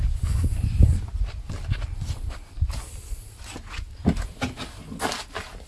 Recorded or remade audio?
recorded